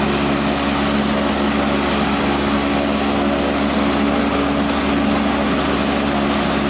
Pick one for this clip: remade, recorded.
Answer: recorded